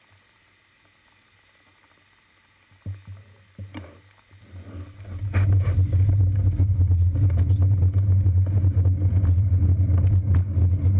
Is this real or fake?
real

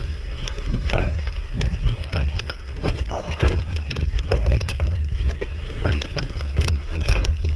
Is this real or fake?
fake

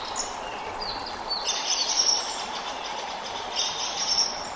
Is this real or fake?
real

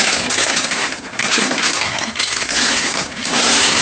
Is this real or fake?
fake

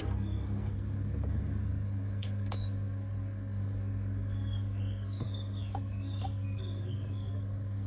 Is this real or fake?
fake